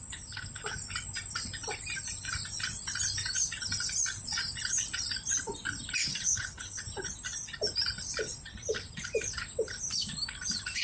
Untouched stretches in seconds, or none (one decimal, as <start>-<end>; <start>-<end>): 0.0-6.0; 6.8-10.8